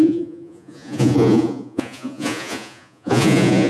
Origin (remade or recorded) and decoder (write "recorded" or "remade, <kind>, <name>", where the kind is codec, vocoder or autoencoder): remade, vocoder, Vocos